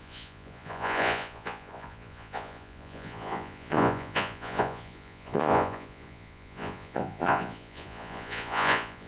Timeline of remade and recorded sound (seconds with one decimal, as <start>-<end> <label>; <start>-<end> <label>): 0.0-9.1 remade